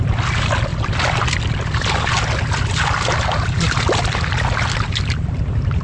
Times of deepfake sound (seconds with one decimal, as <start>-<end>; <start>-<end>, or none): none